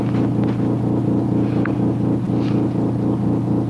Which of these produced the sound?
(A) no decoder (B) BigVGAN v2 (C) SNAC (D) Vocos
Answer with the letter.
A